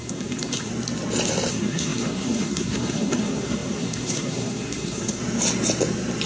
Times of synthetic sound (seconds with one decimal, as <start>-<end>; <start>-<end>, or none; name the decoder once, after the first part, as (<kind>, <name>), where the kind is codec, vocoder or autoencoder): 0.0-0.7 (codec, SNAC); 1.5-5.2